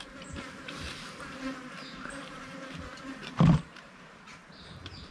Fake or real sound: fake